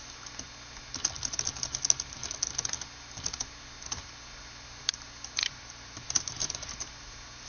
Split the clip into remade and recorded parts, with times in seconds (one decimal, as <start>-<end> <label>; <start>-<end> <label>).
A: 0.0-5.4 recorded; 5.4-6.9 remade; 6.9-7.5 recorded